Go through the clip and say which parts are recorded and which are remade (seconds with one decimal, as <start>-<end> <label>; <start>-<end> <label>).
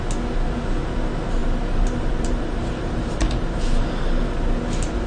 0.0-1.4 recorded; 1.4-4.2 remade; 4.2-5.1 recorded